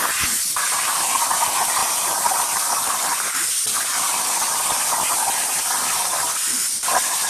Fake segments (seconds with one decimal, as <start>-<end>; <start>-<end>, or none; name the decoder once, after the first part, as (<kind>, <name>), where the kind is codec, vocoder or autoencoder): 1.8-5.1 (vocoder, BigVGAN v2); 5.7-6.2